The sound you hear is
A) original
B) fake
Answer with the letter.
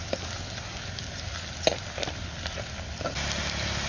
A